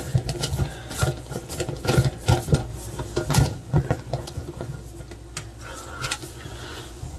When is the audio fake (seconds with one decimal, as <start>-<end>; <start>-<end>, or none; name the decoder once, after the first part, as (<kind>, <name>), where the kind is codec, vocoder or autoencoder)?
0.0-2.7 (vocoder, Vocos); 3.3-4.7; 5.6-7.2